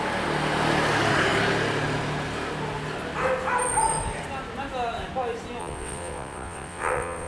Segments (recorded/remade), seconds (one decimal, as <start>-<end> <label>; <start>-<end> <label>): 0.0-5.6 recorded; 5.6-7.3 remade